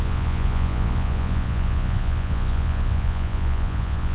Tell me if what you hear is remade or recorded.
remade